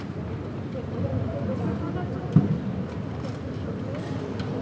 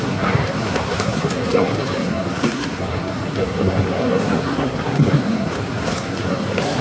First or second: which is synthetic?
second